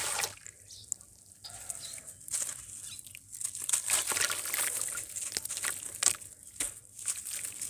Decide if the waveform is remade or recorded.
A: recorded